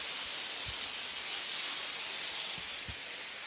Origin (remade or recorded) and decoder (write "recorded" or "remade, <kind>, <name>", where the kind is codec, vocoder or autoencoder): recorded